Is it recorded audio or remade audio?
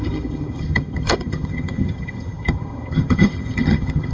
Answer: remade